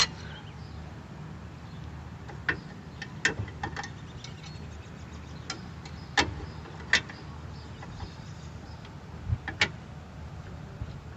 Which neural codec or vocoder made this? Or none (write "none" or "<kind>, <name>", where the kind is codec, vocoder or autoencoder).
none